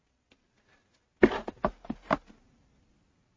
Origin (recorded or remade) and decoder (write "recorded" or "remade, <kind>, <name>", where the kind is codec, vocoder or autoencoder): recorded